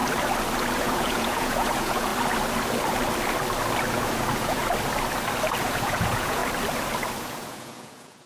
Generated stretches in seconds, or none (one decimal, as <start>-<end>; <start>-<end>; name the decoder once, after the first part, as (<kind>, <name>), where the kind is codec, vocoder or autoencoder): 0.8-2.1 (vocoder, Vocos); 3.9-4.6; 5.6-6.4; 7.2-8.3